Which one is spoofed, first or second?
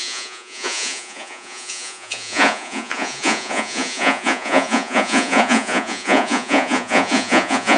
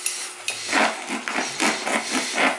first